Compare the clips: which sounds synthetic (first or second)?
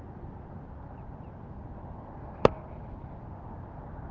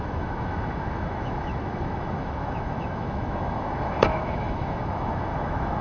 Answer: second